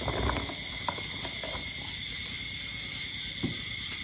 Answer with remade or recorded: recorded